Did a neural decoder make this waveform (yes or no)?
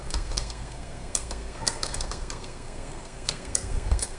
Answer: yes